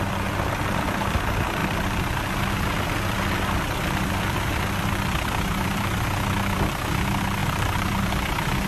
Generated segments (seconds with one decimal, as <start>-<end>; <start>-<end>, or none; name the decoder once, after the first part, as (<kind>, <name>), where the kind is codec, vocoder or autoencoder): 1.6-6.7 (vocoder, BigVGAN v2); 7.4-8.0